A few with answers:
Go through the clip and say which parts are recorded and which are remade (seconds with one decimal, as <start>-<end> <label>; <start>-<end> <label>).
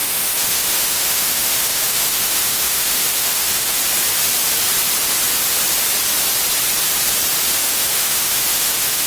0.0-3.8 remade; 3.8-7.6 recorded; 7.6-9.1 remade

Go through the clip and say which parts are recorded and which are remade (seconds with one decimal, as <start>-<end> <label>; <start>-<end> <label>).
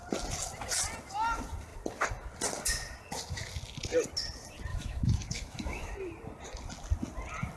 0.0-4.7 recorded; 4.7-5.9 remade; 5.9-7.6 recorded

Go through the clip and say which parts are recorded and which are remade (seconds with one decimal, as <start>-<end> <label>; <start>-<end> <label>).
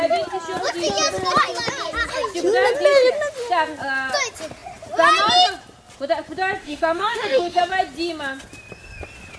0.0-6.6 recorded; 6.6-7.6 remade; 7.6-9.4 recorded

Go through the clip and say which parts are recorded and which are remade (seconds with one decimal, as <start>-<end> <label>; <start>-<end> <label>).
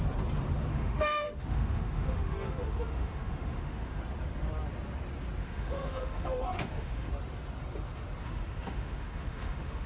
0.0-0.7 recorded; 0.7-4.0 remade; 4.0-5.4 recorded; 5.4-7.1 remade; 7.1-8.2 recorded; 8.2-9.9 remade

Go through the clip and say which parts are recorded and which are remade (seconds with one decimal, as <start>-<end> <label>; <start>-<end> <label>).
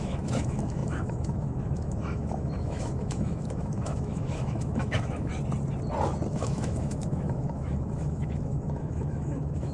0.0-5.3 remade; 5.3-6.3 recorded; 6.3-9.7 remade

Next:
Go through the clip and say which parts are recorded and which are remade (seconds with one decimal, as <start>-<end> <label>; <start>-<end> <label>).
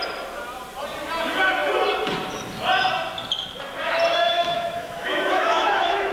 0.0-4.1 recorded; 4.1-6.1 remade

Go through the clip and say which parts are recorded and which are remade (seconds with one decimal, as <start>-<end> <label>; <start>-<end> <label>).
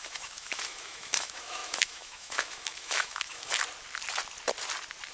0.0-3.5 remade; 3.5-5.1 recorded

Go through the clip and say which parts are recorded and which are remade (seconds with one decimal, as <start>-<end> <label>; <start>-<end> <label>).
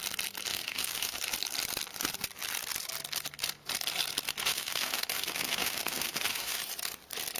0.0-0.5 recorded; 0.5-1.2 remade; 1.2-4.5 recorded; 4.5-6.6 remade; 6.6-7.4 recorded